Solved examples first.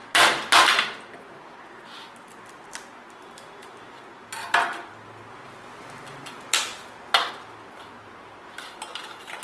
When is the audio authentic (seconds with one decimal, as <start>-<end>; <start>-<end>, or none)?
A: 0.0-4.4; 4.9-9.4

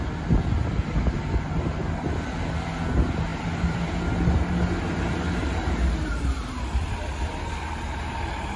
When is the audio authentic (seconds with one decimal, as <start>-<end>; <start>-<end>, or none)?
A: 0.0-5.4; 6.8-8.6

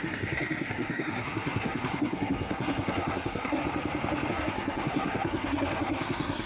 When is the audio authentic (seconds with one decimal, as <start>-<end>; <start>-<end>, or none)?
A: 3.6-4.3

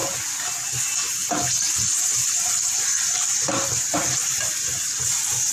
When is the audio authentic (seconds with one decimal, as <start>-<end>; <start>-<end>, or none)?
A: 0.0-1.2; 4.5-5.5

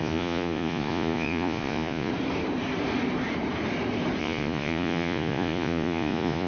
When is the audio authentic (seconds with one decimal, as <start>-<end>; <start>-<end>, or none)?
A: 2.1-4.2

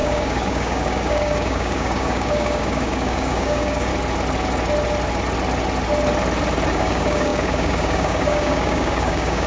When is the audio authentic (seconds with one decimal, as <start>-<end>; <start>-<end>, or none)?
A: 3.9-6.7

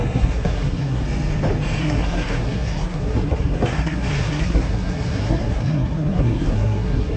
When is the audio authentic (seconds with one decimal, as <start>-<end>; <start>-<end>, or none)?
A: 1.0-1.8

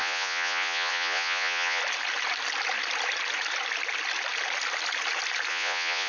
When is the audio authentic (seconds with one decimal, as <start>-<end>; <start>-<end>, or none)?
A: 1.8-5.5